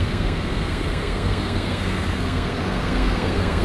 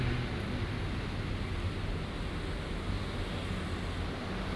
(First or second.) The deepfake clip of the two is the first